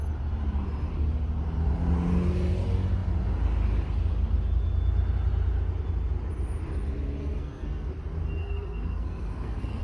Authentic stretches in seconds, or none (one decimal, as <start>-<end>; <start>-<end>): 0.0-7.2; 7.9-8.4